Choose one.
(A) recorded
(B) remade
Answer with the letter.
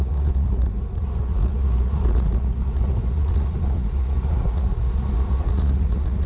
B